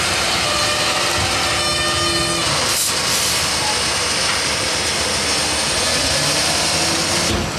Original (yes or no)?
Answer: yes